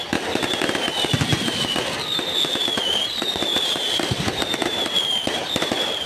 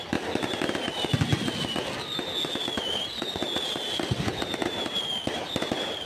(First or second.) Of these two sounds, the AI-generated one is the first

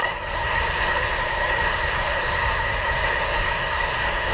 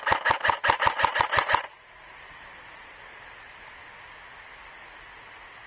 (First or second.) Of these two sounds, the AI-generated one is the first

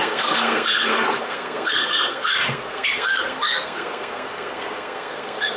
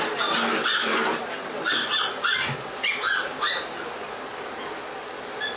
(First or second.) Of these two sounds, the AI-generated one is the first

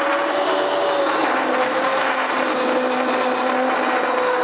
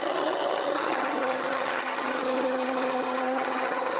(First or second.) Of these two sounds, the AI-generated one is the second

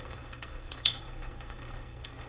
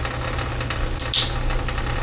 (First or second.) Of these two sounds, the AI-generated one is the first